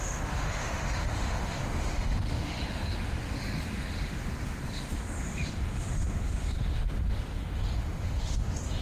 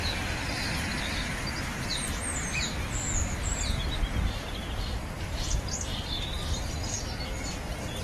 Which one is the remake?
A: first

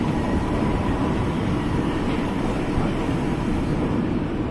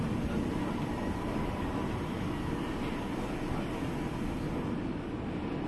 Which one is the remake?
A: first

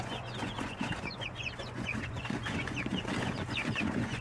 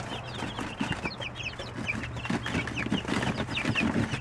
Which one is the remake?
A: first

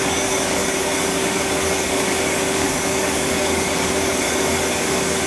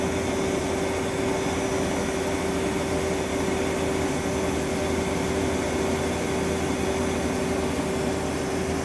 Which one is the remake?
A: first